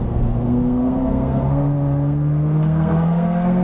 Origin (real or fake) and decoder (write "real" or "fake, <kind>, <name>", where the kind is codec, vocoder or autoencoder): fake, codec, SNAC